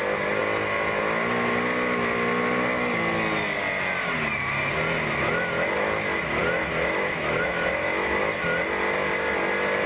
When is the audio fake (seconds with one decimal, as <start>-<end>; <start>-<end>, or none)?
6.4-8.4